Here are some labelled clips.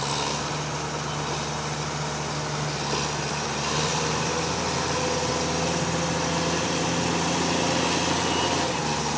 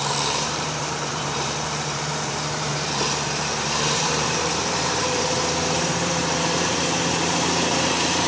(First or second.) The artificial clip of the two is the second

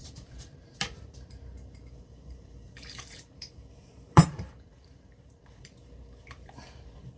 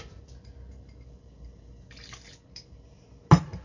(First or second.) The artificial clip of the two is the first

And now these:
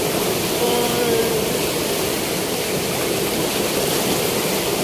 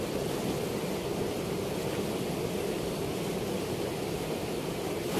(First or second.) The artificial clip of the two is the first